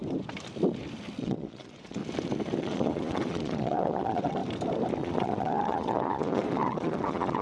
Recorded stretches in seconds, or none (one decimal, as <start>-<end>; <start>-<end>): 0.0-1.2; 2.0-2.6; 4.4-5.0